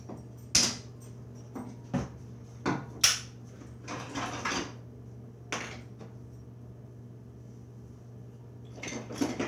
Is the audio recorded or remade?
recorded